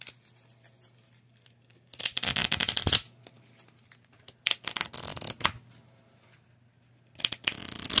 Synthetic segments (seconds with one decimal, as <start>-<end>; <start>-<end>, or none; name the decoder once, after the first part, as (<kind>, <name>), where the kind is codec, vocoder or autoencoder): none

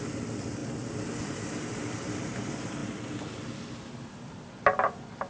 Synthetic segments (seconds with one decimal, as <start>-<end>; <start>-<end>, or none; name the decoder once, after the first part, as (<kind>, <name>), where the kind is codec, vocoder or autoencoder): none

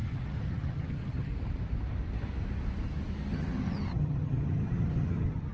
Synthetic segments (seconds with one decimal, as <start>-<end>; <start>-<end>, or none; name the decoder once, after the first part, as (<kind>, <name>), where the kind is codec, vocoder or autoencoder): 0.0-1.3 (vocoder, HiFi-GAN); 3.3-5.5

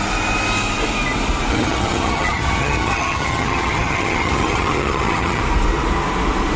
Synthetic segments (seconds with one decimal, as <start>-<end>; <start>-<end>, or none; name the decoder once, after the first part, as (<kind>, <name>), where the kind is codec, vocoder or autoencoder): 1.5-5.4 (vocoder, HiFi-GAN)

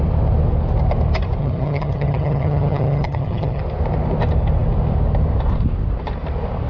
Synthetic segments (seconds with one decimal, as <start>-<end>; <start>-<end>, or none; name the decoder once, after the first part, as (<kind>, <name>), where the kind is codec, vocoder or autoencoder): 1.4-3.6 (vocoder, HiFi-GAN)

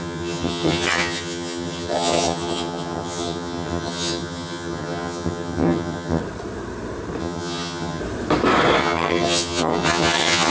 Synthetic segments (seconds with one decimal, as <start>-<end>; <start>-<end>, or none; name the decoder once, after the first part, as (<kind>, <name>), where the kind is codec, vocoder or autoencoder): 0.0-6.2 (vocoder, HiFi-GAN); 7.2-8.0; 8.8-10.5